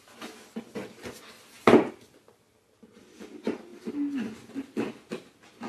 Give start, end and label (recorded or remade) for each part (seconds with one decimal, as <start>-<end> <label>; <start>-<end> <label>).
0.0-5.7 recorded